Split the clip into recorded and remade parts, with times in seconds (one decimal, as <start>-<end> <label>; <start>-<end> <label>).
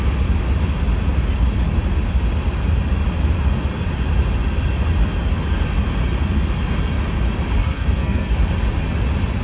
0.0-7.6 recorded; 7.6-8.3 remade; 8.3-9.4 recorded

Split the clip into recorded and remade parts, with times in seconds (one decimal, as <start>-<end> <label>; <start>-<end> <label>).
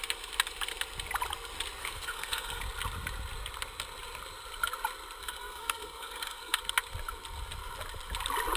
0.0-1.8 recorded; 1.8-2.6 remade; 2.6-5.2 recorded; 5.2-6.6 remade; 6.6-8.6 recorded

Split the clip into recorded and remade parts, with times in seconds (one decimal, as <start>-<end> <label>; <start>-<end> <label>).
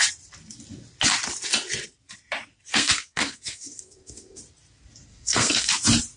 0.0-2.7 recorded; 2.7-4.4 remade; 4.4-5.1 recorded; 5.1-5.7 remade; 5.7-6.2 recorded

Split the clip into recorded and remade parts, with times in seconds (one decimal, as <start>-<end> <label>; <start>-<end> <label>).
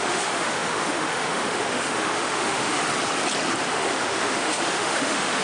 0.0-2.8 remade; 2.8-3.7 recorded; 3.7-5.4 remade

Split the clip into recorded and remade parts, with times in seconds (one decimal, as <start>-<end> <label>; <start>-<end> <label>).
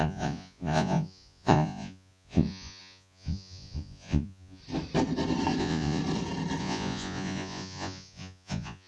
0.0-4.6 remade; 4.6-5.6 recorded; 5.6-6.0 remade; 6.0-6.6 recorded; 6.6-8.9 remade